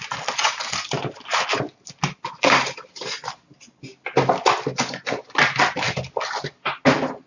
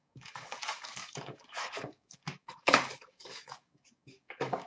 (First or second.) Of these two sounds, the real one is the first